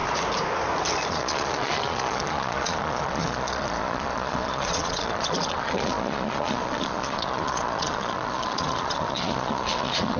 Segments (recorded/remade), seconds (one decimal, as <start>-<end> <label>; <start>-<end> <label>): 0.0-1.1 recorded; 1.1-10.2 remade